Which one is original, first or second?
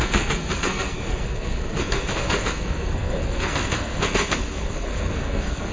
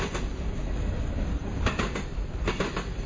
second